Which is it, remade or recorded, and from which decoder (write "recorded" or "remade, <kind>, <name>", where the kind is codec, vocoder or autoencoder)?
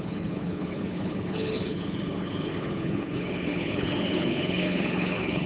remade, codec, HILCodec